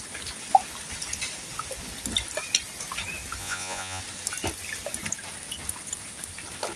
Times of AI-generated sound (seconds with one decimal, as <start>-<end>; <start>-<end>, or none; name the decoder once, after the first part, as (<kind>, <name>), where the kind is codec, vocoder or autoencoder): 3.4-4.0 (vocoder, Vocos)